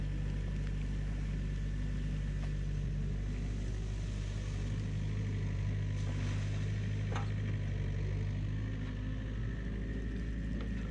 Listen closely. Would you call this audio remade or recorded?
recorded